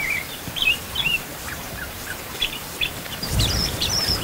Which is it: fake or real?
fake